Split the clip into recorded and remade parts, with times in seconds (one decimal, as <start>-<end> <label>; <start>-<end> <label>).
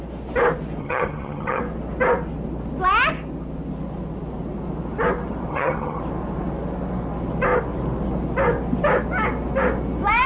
0.0-0.8 recorded; 0.8-1.6 remade; 1.6-5.5 recorded; 5.5-6.0 remade; 6.0-10.3 recorded